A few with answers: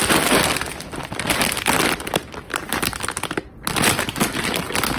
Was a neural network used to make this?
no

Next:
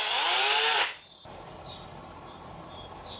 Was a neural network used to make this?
no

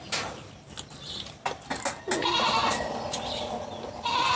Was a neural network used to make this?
no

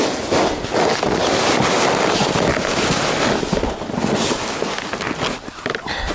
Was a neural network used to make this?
no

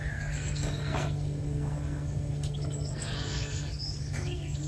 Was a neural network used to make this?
yes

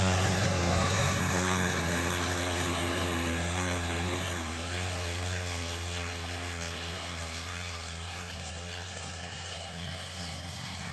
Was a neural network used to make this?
yes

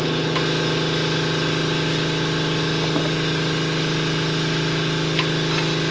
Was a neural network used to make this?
no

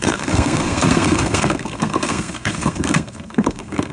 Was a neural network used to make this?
yes